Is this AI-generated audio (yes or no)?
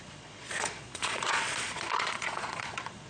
yes